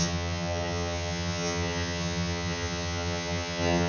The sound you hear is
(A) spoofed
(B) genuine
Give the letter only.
A